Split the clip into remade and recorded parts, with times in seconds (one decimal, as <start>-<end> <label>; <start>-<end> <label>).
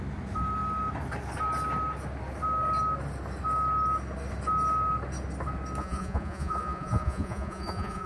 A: 0.0-5.8 recorded; 5.8-8.1 remade